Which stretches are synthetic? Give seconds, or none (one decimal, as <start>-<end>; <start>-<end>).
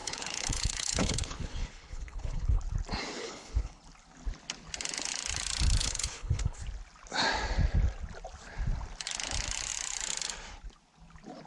0.0-2.6; 3.2-3.8; 5.8-6.6